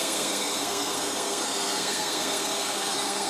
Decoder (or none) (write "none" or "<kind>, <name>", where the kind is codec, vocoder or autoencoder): codec, SNAC